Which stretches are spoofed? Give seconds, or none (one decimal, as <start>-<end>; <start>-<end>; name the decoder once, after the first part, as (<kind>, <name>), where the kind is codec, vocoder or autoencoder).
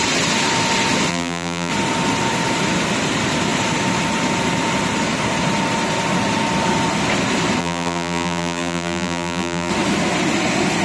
1.1-1.7 (vocoder, BigVGAN v2); 7.6-9.7